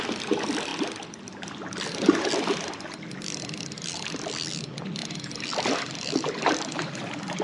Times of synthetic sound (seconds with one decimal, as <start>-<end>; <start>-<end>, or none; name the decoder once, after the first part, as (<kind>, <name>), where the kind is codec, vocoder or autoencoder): none